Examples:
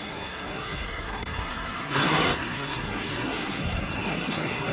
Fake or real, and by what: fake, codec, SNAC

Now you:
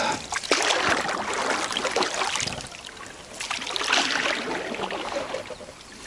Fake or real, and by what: real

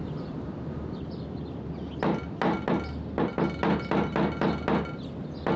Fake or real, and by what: real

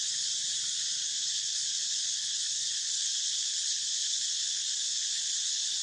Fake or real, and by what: fake, codec, HILCodec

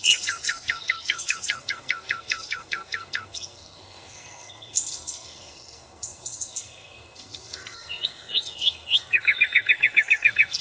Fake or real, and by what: fake, codec, SNAC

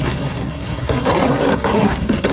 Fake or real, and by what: fake, codec, SNAC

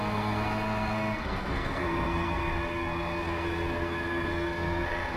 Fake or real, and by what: fake, codec, SNAC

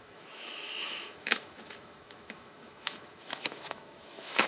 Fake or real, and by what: fake, autoencoder, DAC-VAE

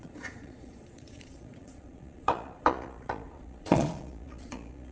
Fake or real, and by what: fake, vocoder, Vocos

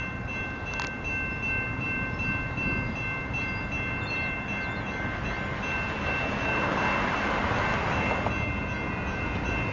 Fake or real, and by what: real